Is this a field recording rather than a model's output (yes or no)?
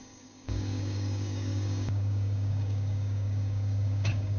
no